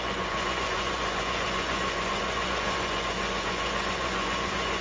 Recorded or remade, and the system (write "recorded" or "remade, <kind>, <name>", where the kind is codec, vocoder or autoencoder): remade, vocoder, Vocos